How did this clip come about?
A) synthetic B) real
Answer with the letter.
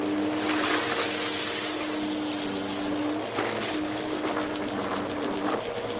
B